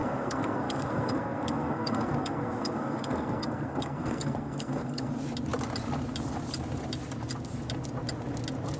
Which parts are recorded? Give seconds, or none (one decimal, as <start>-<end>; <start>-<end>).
5.1-8.8